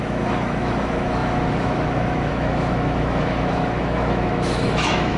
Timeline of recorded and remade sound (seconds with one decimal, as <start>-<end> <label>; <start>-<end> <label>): 0.0-5.2 remade